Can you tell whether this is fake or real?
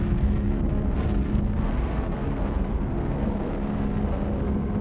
fake